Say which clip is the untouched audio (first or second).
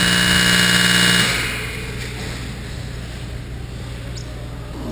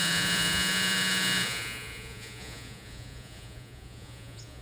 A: first